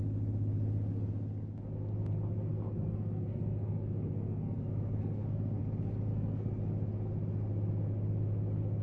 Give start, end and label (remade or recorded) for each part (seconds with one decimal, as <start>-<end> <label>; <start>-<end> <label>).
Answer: 0.0-2.5 recorded; 2.5-5.6 remade; 5.6-6.1 recorded; 6.1-6.6 remade; 6.6-8.8 recorded